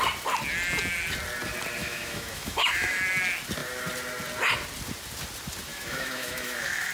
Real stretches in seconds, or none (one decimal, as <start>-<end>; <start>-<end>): 0.0-1.8; 3.0-5.7